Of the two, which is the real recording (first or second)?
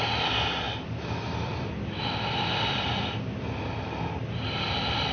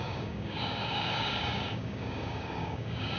first